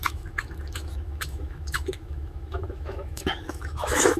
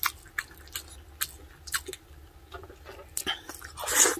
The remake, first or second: first